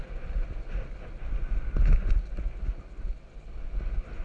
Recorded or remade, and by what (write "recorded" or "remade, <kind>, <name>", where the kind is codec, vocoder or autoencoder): recorded